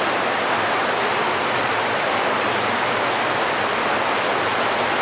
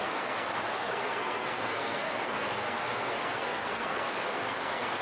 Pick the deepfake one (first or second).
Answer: second